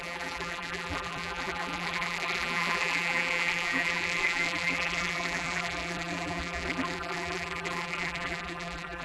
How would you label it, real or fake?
fake